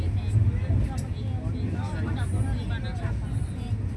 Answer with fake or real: real